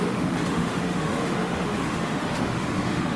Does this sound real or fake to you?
fake